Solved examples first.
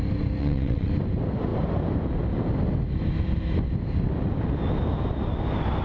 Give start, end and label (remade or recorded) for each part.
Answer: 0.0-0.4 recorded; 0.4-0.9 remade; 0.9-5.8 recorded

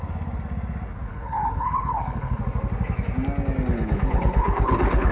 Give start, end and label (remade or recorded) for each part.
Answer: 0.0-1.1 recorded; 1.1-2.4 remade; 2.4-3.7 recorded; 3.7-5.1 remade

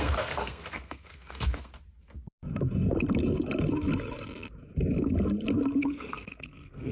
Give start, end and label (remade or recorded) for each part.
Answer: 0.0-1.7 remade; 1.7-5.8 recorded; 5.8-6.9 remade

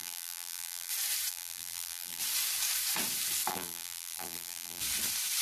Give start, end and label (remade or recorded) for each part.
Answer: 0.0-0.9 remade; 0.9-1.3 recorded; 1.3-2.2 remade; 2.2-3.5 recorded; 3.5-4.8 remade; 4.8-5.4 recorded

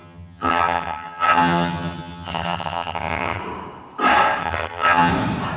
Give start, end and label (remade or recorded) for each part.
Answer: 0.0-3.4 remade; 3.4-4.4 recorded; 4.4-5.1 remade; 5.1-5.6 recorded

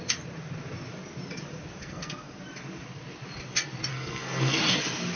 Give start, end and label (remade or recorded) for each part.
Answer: 0.0-1.8 recorded; 1.8-2.3 remade; 2.3-3.9 recorded; 3.9-4.6 remade; 4.6-5.2 recorded

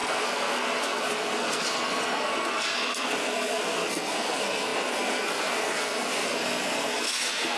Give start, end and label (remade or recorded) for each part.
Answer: 0.0-7.6 remade

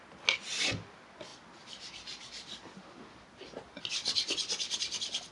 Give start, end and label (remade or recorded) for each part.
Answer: 0.0-5.3 recorded